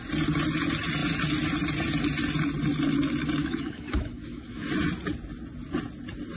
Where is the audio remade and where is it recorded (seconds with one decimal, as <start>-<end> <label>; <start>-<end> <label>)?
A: 0.0-3.4 recorded; 3.4-4.7 remade; 4.7-6.4 recorded

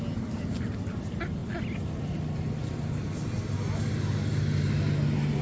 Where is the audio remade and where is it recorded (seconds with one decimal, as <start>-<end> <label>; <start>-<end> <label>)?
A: 0.0-5.4 recorded

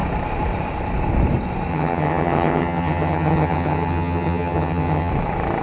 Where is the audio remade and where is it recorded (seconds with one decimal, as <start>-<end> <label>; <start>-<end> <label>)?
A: 0.0-1.7 recorded; 1.7-5.1 remade; 5.1-5.6 recorded

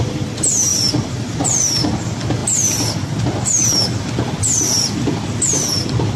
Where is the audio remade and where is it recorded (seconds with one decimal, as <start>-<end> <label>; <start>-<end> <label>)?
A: 0.0-6.2 recorded

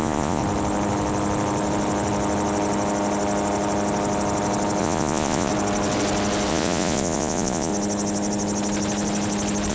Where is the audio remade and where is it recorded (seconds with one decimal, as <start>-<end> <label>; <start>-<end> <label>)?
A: 0.0-0.4 remade; 0.4-4.8 recorded; 4.8-5.5 remade; 5.5-6.5 recorded; 6.5-7.7 remade; 7.7-9.7 recorded